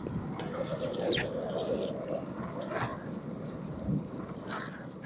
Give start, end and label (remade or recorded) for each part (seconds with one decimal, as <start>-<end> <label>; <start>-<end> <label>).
0.0-2.9 recorded; 2.9-4.1 remade; 4.1-5.1 recorded